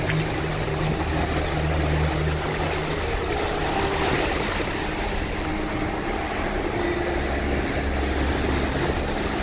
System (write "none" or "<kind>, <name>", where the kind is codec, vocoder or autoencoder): none